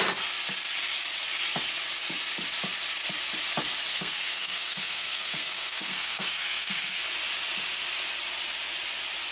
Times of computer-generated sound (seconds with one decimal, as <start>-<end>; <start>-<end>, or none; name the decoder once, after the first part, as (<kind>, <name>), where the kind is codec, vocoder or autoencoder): 3.9-7.0 (codec, SNAC)